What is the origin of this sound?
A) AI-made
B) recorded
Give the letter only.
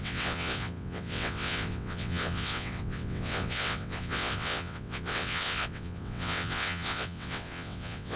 A